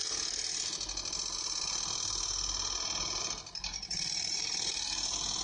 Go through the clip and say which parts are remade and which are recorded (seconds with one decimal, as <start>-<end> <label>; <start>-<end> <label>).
0.0-3.7 recorded; 3.7-4.7 remade; 4.7-5.4 recorded